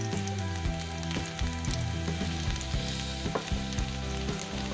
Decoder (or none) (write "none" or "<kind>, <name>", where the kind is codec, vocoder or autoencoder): none